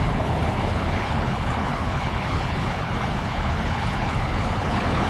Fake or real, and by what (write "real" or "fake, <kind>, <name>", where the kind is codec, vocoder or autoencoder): fake, codec, HILCodec